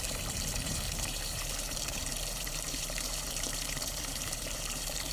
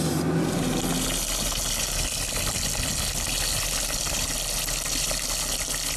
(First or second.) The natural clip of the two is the second